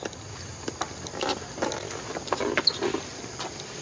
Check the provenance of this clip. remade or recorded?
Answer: recorded